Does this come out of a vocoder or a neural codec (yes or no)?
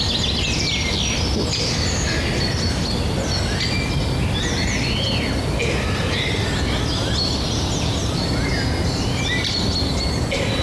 no